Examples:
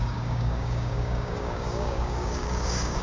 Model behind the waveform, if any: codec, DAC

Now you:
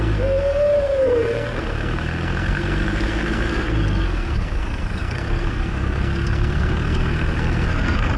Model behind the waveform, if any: codec, SNAC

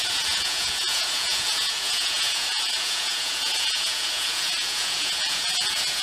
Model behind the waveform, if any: vocoder, Vocos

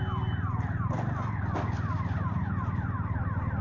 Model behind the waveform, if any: none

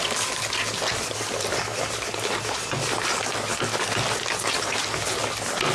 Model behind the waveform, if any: none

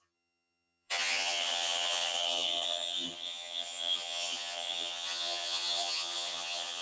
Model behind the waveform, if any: vocoder, HiFi-GAN